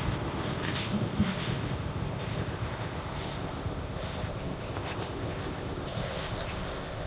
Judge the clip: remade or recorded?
remade